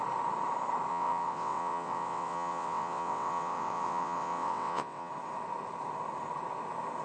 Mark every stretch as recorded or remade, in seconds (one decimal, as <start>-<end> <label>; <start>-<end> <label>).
0.0-0.9 recorded; 0.9-5.1 remade; 5.1-7.0 recorded